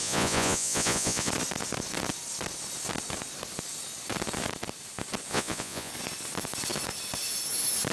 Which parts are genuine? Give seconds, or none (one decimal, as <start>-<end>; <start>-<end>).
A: 1.3-5.3; 5.9-7.9